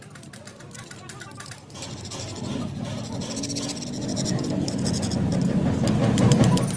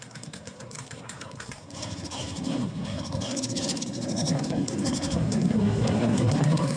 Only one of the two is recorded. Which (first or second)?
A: first